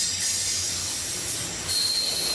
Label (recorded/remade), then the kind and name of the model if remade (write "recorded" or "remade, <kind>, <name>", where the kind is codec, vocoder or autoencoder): recorded